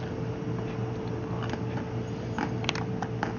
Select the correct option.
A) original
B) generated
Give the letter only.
A